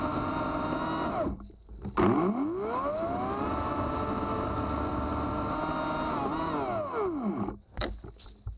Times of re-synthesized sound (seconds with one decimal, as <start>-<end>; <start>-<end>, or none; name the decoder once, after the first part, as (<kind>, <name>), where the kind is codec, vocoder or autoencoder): none